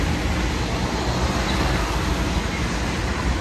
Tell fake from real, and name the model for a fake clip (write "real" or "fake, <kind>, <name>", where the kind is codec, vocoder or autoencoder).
real